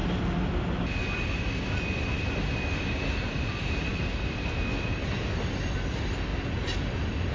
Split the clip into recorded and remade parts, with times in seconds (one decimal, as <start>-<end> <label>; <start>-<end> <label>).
0.0-7.3 recorded